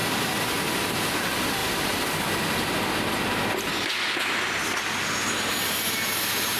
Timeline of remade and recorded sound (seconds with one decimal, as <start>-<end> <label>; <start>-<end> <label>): 0.0-6.6 recorded